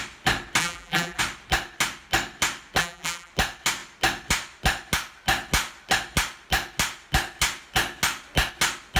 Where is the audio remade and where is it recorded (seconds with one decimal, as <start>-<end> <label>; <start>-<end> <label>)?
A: 0.0-0.6 recorded; 0.6-1.2 remade; 1.2-2.8 recorded; 2.8-3.3 remade; 3.3-9.0 recorded